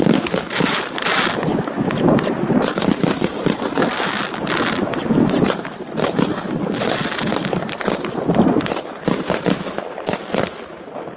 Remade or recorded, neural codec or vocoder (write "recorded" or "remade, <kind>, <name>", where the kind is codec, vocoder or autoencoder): recorded